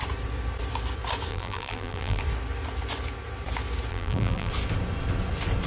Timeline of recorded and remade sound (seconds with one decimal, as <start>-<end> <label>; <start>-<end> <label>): 0.0-1.3 recorded; 1.3-2.2 remade; 2.2-3.9 recorded; 3.9-4.5 remade; 4.5-5.7 recorded